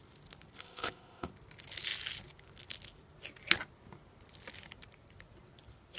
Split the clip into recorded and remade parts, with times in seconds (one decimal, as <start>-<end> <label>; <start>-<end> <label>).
0.0-0.6 recorded; 0.6-1.3 remade; 1.3-6.0 recorded